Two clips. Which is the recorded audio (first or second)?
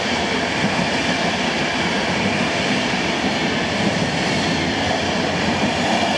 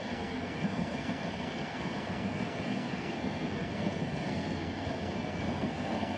first